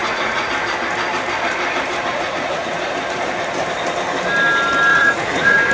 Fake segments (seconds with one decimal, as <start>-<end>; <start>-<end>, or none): 0.0-0.5; 2.1-2.7; 4.9-5.7